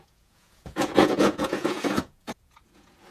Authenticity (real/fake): fake